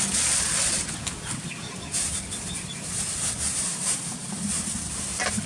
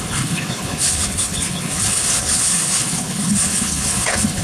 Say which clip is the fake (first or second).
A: second